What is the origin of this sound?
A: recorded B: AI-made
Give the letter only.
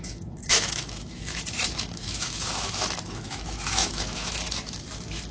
B